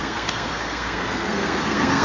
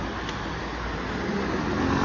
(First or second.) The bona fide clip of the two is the second